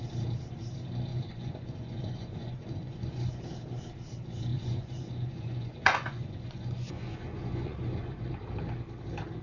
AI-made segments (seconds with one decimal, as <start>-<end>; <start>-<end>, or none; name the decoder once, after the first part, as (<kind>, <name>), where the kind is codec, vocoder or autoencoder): 1.1-3.4 (vocoder, Vocos); 4.5-8.3